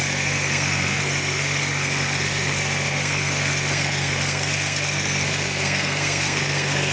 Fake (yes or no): yes